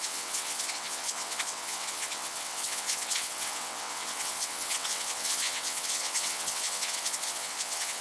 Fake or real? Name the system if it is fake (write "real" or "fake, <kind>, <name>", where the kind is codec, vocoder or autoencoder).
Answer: fake, vocoder, WaveNeXt